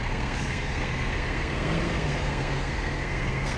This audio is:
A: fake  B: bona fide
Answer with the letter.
A